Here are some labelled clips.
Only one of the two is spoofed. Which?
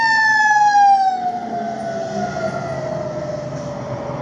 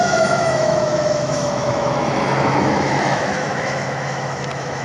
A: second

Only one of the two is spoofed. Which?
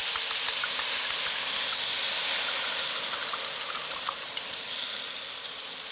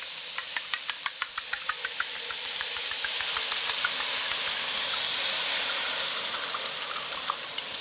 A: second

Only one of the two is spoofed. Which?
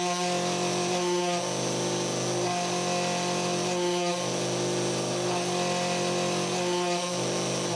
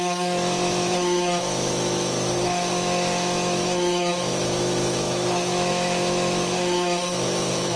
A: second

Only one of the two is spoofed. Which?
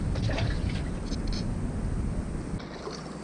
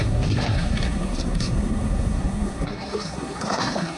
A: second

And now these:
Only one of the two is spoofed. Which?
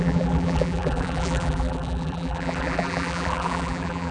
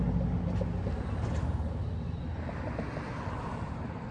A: first